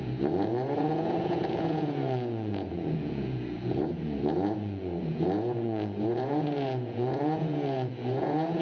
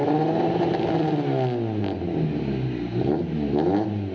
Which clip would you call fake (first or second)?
first